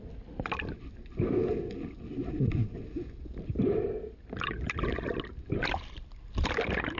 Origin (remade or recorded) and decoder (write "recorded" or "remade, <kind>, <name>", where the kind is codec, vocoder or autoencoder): recorded